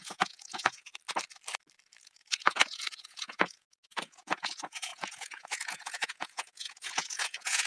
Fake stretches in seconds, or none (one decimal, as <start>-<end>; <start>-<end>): 0.0-0.9; 2.0-7.7